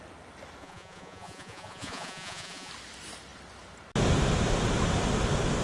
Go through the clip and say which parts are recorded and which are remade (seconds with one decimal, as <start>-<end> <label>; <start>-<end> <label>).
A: 0.0-0.6 recorded; 0.6-2.7 remade; 2.7-5.6 recorded